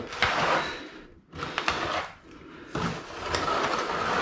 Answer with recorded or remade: recorded